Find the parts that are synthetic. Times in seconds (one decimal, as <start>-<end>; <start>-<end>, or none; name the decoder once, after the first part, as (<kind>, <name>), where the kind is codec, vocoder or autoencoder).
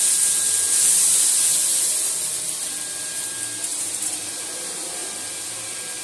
3.7-4.5 (vocoder, BigVGAN v2)